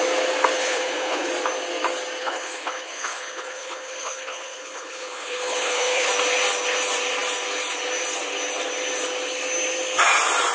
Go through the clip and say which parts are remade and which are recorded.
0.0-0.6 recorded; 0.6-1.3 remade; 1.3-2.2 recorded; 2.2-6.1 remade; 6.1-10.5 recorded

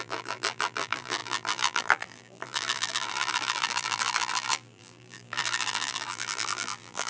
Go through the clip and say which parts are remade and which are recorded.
0.0-7.1 remade

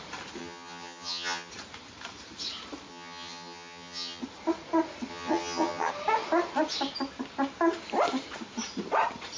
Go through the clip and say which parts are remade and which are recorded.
0.0-0.4 recorded; 0.4-1.5 remade; 1.5-2.9 recorded; 2.9-4.2 remade; 4.2-5.1 recorded; 5.1-5.9 remade; 5.9-9.4 recorded